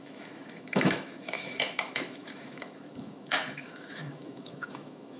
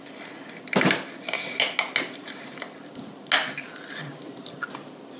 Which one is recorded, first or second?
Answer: second